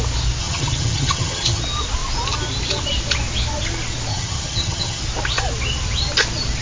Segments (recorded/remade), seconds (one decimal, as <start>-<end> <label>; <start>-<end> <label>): 0.0-0.4 recorded; 0.4-1.6 remade; 1.6-4.1 recorded; 4.1-5.0 remade; 5.0-6.6 recorded